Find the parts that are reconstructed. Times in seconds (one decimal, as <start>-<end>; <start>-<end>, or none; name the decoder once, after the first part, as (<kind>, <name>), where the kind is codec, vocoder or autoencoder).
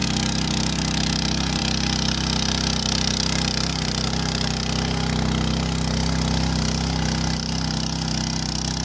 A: 0.0-1.6 (vocoder, BigVGAN v2)